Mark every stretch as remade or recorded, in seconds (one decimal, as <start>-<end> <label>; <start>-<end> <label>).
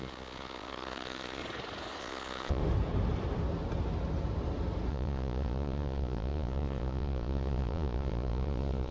0.0-1.4 remade; 1.4-2.0 recorded; 2.0-2.6 remade; 2.6-4.9 recorded; 4.9-8.9 remade